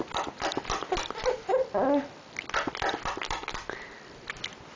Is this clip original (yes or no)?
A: yes